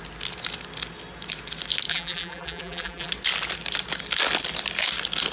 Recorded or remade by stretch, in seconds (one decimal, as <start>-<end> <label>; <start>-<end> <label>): 0.0-1.9 recorded; 1.9-3.1 remade; 3.1-5.3 recorded